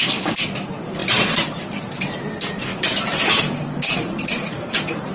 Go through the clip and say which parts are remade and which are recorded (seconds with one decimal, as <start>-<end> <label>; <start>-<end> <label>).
0.0-1.0 recorded; 1.0-2.2 remade; 2.2-2.7 recorded; 2.7-3.4 remade; 3.4-5.1 recorded